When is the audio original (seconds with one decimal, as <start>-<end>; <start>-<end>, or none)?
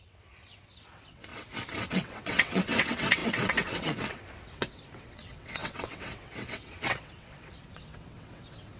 1.3-1.9